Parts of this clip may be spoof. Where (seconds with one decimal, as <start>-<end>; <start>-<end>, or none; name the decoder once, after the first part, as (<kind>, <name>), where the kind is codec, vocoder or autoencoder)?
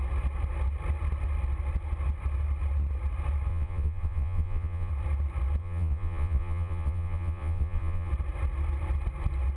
3.5-4.9 (vocoder, Vocos); 5.6-8.1